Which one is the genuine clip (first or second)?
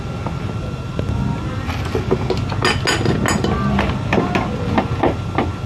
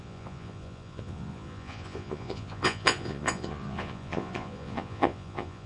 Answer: first